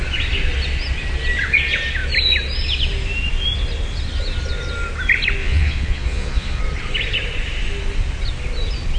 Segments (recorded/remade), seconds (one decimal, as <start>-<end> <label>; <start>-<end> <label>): 0.0-5.4 recorded; 5.4-6.6 remade; 6.6-9.0 recorded